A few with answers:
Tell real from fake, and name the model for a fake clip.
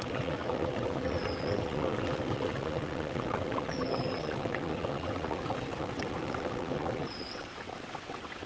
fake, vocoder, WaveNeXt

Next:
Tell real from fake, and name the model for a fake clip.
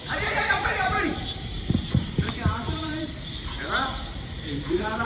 fake, vocoder, BigVGAN v2